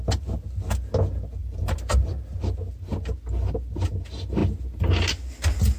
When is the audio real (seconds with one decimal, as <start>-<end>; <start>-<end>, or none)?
0.0-1.4; 2.4-5.8